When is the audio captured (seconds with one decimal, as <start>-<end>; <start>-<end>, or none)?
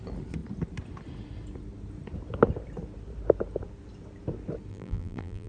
0.0-4.7